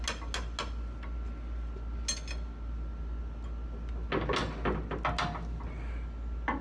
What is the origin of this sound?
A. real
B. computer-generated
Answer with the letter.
A